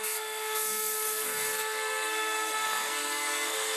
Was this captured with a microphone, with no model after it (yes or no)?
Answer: no